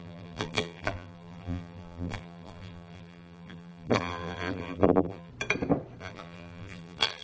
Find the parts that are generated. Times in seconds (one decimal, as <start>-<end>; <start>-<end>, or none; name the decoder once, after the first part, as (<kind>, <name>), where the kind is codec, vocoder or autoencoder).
0.0-5.3 (vocoder, BigVGAN v2); 6.0-7.2

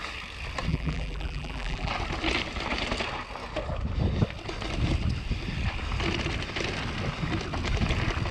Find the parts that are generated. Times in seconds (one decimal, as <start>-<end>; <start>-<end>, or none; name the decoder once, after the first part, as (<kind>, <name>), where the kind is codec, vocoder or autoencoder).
0.7-1.9 (vocoder, BigVGAN v2)

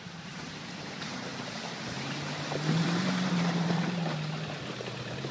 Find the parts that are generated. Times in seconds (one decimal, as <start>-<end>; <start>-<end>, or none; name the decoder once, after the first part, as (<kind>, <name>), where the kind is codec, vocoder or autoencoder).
0.0-5.3 (vocoder, BigVGAN v2)

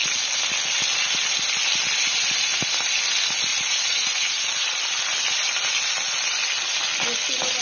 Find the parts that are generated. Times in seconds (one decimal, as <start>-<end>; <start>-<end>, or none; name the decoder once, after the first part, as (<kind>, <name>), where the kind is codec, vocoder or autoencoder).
3.5-4.8 (vocoder, Vocos)